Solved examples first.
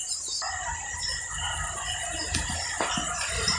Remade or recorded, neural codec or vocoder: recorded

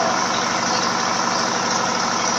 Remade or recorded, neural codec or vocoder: recorded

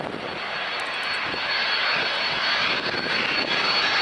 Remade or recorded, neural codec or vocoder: recorded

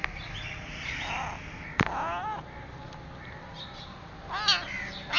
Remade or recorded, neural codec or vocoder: recorded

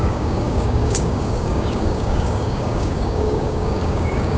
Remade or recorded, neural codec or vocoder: remade, codec, DAC